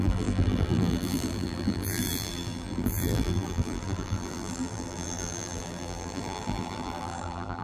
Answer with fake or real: fake